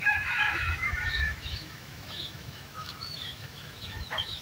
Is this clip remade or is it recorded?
remade